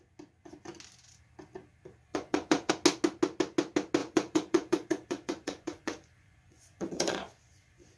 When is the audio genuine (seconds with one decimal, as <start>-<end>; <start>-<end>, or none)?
0.0-2.1; 2.7-4.0